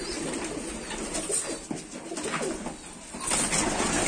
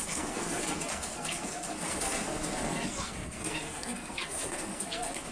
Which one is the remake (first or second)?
second